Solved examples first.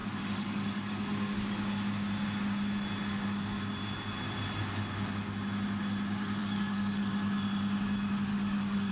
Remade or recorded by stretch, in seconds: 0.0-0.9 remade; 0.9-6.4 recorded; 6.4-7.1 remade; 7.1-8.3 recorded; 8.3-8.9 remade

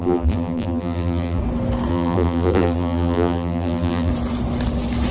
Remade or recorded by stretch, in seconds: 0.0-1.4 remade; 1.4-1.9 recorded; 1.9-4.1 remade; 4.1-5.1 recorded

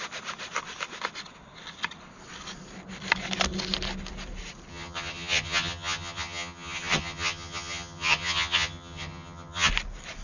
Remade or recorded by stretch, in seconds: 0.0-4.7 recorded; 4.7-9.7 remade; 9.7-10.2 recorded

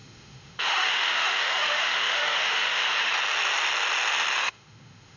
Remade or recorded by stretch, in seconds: 0.0-3.1 remade; 3.1-4.4 recorded; 4.4-5.2 remade